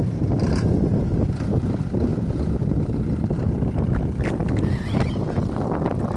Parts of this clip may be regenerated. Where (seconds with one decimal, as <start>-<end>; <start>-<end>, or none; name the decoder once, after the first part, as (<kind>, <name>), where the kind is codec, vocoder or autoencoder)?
2.1-5.8 (vocoder, BigVGAN v2)